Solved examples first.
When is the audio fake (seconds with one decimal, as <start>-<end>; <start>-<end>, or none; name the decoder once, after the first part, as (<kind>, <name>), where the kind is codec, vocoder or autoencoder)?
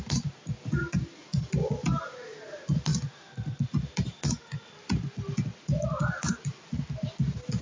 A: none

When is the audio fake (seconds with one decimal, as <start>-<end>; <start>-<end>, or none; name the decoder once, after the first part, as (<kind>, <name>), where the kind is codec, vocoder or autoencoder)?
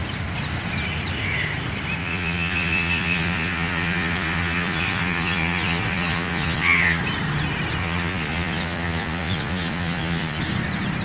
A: 2.0-7.0 (vocoder, Vocos); 7.8-10.4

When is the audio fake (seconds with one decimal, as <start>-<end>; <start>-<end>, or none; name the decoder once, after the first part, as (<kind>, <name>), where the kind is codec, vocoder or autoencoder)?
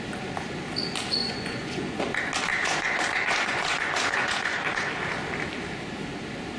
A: 1.2-2.0 (vocoder, Vocos); 2.5-4.9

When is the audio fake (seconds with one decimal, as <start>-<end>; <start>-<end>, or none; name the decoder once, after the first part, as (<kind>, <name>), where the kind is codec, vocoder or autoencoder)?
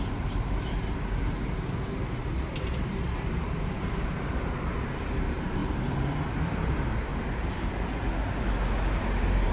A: 0.0-7.1 (vocoder, BigVGAN v2); 9.0-9.5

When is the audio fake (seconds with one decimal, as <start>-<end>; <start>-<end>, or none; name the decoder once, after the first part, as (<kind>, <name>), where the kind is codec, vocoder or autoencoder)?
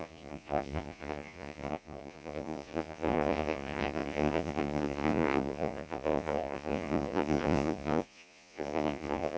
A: 0.0-9.4 (vocoder, Vocos)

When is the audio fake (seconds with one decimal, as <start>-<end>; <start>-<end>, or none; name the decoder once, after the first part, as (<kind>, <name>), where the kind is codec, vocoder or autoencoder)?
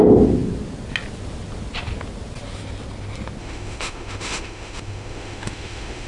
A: 3.4-6.1 (autoencoder, DAC-VAE)